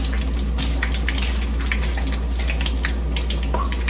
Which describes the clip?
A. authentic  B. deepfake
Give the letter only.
A